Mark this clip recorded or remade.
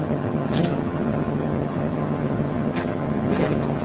remade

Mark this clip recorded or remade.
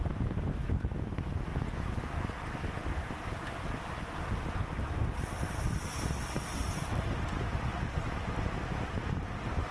recorded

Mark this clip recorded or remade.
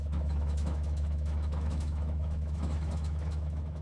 remade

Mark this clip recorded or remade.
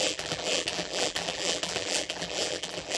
remade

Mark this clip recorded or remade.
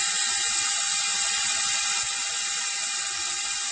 recorded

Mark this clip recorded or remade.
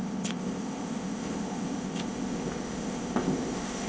remade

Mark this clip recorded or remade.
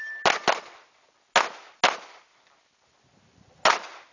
recorded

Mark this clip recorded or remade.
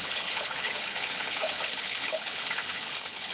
remade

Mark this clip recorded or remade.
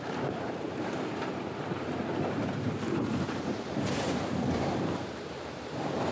remade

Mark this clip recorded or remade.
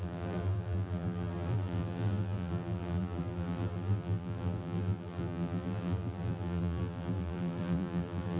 remade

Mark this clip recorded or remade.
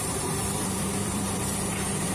remade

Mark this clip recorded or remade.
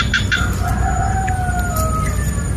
recorded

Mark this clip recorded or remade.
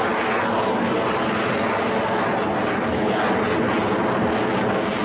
recorded